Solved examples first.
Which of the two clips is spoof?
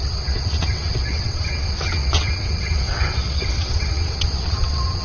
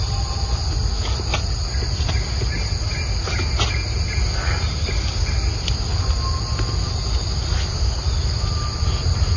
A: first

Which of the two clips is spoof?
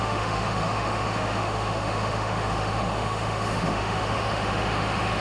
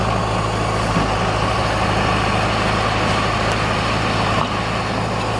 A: first